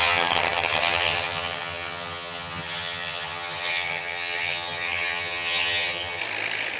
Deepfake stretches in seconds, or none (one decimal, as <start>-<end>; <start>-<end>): 0.0-6.2

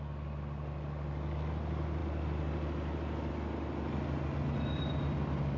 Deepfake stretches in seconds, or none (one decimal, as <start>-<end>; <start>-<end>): none

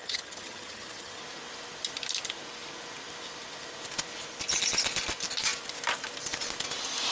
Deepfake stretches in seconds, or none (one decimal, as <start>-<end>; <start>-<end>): 0.0-1.2

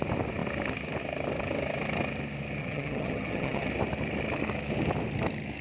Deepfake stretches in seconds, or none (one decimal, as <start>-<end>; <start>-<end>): 2.6-3.7

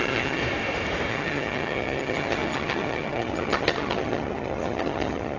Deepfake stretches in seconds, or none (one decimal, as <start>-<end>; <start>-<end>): 0.0-0.4; 1.1-5.4